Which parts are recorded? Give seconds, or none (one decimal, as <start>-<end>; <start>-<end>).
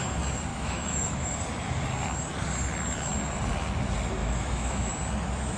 0.0-0.5; 1.4-4.2; 4.9-5.6